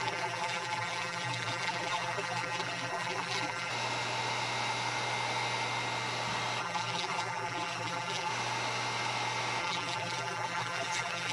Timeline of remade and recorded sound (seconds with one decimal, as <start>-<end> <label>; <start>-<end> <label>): 0.0-3.7 remade; 3.7-6.6 recorded; 6.6-8.3 remade; 8.3-9.6 recorded; 9.6-11.3 remade